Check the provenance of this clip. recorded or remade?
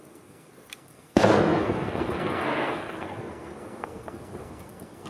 remade